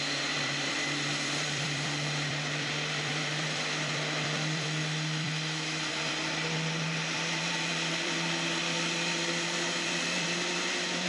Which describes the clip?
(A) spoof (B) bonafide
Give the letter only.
A